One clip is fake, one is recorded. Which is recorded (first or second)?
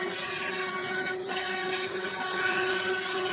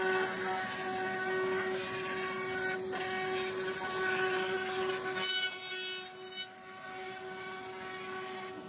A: second